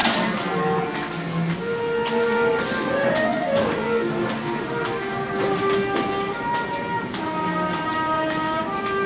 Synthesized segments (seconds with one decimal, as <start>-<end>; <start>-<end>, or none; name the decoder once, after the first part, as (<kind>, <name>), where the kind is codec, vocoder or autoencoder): 2.1-3.8 (vocoder, BigVGAN v2); 4.6-9.1

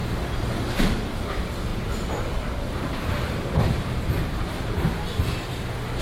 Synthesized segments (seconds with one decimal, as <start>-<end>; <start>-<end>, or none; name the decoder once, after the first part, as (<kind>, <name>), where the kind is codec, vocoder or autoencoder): 1.7-5.3 (vocoder, BigVGAN v2)

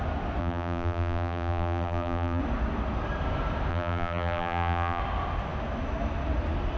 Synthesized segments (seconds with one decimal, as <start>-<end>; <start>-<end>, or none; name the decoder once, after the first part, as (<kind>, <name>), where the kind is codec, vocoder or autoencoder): 0.4-2.4 (vocoder, BigVGAN v2); 3.7-5.0

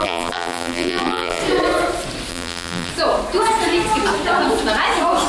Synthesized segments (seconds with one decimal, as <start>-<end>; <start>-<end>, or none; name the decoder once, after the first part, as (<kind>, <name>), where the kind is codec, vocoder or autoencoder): 0.0-1.4 (vocoder, BigVGAN v2); 2.3-2.9

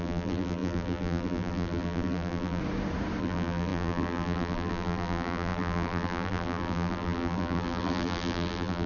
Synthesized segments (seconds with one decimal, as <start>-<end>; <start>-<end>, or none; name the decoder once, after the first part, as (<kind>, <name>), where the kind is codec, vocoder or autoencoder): 0.0-2.6 (vocoder, BigVGAN v2); 3.2-8.9

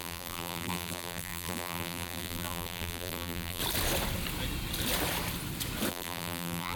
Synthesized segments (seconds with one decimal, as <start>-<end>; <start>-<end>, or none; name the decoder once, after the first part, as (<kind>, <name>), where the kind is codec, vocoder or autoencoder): 0.0-3.6 (vocoder, BigVGAN v2); 5.9-6.8

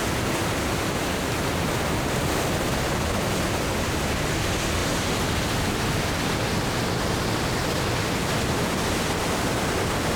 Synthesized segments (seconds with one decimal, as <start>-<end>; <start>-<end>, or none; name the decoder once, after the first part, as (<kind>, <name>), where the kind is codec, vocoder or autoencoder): none